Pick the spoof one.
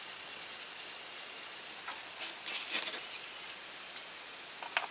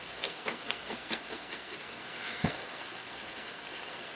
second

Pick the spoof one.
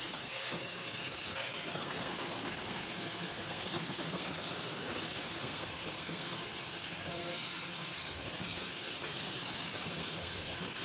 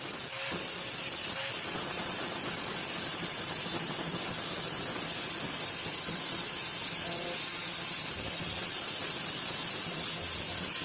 first